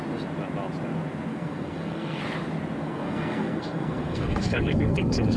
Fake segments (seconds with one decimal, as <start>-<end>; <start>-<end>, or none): 1.3-2.2; 2.8-5.4

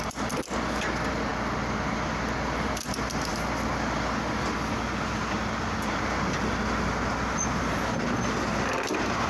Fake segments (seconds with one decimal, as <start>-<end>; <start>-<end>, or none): none

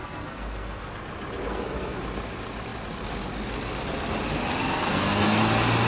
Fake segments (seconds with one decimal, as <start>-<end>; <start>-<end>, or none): 0.0-0.9; 1.5-2.0; 4.9-5.4

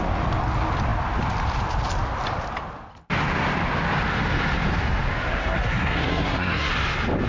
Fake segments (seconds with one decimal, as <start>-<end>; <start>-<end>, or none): 5.4-6.7

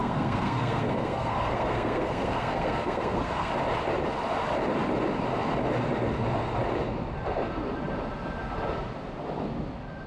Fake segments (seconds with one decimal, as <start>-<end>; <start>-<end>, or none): 0.0-3.5

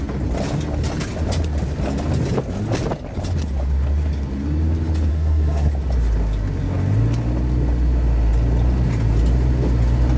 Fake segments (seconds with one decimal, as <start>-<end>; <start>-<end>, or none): 5.1-5.7

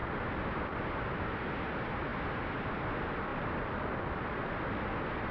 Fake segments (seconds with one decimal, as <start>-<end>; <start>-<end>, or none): none

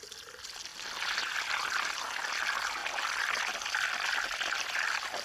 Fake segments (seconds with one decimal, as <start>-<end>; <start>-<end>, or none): none